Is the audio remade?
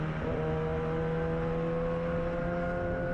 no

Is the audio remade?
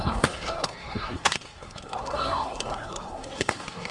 yes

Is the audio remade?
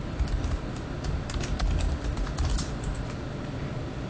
yes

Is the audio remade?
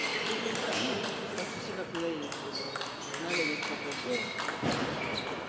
no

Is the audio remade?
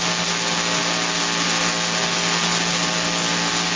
no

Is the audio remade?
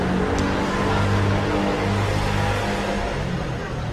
no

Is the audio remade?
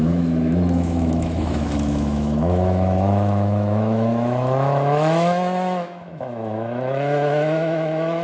yes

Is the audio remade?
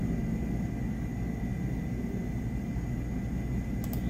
no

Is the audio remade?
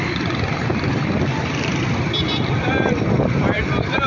yes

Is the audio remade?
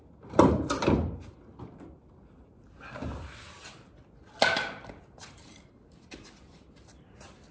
no